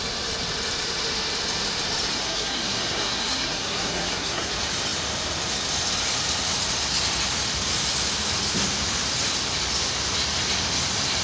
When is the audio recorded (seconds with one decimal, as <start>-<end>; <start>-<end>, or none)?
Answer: 0.0-2.1; 4.5-11.2